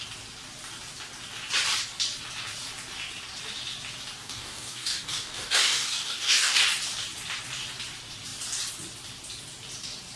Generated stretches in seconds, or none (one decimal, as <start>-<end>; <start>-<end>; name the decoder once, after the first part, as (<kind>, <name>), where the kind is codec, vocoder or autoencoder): 4.2-6.6 (codec, DAC)